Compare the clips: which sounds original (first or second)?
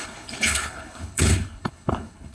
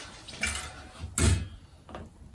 second